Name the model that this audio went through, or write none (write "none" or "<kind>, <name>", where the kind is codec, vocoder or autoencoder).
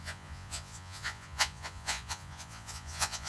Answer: vocoder, Vocos